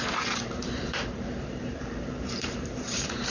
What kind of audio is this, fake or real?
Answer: fake